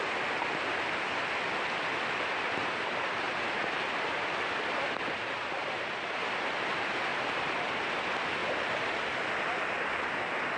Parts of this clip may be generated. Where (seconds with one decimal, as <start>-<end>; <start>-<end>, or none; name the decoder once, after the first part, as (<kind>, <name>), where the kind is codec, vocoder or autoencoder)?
1.9-4.2 (vocoder, BigVGAN v2); 5.6-6.5; 7.1-7.6